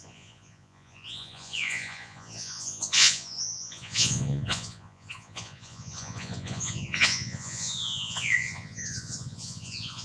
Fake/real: fake